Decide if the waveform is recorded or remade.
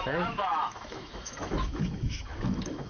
remade